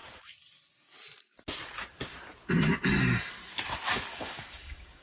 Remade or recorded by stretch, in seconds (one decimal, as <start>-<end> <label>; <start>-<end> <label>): 0.0-4.1 recorded; 4.1-5.0 remade